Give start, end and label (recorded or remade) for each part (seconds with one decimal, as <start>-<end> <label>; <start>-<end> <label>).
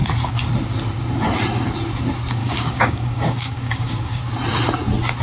0.0-2.4 recorded; 2.4-4.2 remade; 4.2-5.2 recorded